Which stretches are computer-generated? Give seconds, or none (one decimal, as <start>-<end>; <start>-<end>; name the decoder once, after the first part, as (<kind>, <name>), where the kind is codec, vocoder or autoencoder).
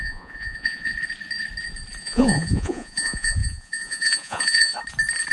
0.0-0.9 (vocoder, Vocos); 2.0-4.7